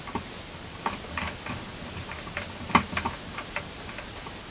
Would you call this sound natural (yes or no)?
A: yes